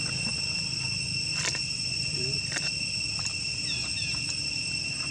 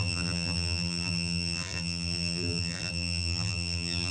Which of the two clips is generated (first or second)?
second